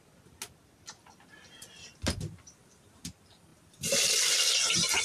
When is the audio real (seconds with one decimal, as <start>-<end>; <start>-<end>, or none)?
0.0-5.0